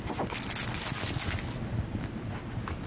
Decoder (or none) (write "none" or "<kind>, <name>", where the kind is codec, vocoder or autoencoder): none